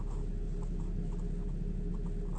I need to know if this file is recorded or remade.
recorded